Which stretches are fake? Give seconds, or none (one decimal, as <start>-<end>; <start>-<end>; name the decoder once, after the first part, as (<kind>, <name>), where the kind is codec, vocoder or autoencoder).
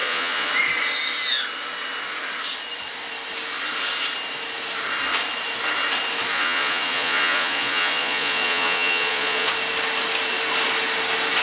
0.0-0.5 (vocoder, Vocos); 6.3-9.5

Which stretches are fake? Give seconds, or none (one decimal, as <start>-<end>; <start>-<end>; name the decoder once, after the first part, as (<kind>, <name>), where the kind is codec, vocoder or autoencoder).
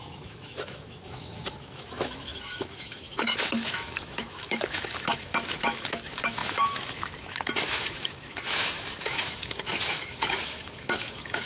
0.0-11.5 (autoencoder, DAC-VAE)